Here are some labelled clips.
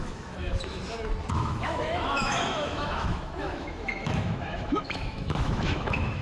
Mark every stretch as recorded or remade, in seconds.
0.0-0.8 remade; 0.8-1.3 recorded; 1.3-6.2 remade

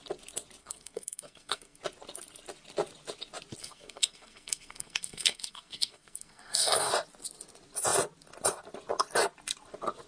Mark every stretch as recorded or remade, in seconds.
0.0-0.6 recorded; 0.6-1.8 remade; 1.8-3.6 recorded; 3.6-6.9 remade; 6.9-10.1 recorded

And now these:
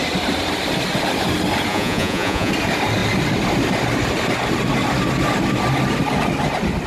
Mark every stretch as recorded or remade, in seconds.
0.0-1.7 recorded; 1.7-2.5 remade; 2.5-6.9 recorded